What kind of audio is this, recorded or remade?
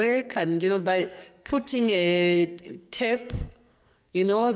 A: remade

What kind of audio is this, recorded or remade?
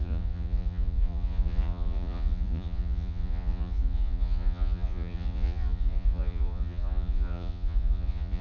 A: remade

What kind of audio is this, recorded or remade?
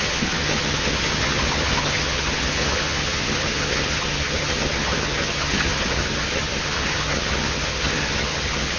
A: remade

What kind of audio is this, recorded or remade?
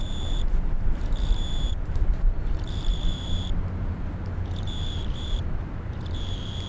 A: remade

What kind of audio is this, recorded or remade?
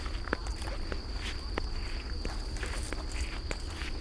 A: recorded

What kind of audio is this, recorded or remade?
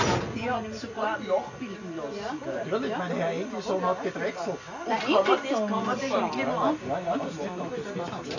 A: recorded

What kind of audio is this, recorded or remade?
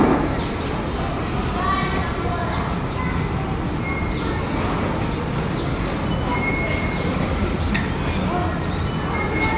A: recorded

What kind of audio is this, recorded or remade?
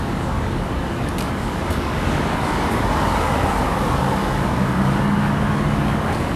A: remade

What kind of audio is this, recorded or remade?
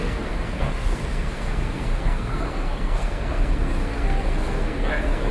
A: remade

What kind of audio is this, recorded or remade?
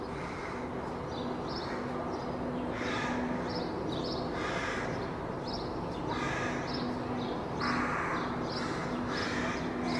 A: recorded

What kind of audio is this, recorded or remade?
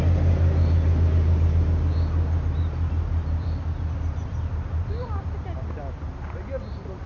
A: recorded